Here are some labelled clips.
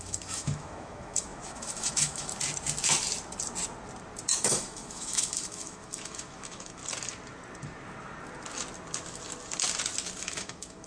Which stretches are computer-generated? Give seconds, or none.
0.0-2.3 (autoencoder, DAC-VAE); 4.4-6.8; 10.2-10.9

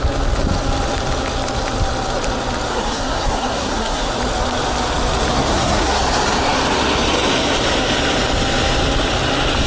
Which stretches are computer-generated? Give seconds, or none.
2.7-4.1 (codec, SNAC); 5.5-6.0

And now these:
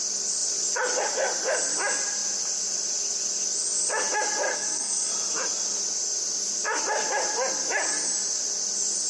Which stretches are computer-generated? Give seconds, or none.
4.5-5.1 (codec, SNAC)

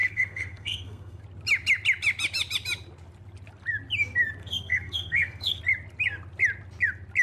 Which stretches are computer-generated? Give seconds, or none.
0.0-1.2 (codec, SNAC); 4.4-5.6

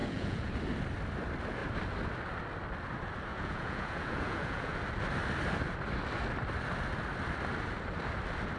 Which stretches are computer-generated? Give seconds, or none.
0.0-0.5 (vocoder, Vocos); 3.3-4.8

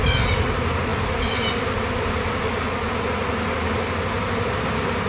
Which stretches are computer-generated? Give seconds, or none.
none